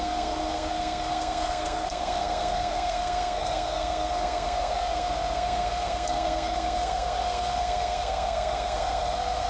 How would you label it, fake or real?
fake